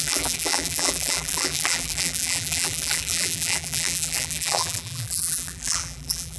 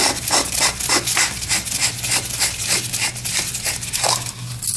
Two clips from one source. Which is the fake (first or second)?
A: first